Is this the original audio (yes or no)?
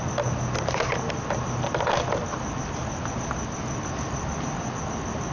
yes